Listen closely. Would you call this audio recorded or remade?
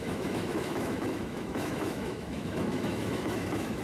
remade